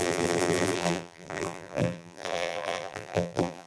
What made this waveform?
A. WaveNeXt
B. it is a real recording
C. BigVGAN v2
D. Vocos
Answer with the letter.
C